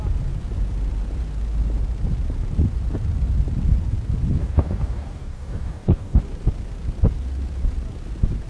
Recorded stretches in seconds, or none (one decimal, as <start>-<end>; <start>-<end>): 0.0-4.4; 6.2-8.5